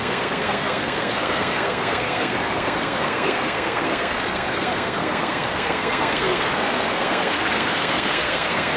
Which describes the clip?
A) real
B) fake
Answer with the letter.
B